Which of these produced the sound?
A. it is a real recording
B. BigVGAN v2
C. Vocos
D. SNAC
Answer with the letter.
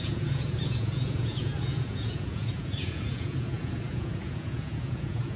C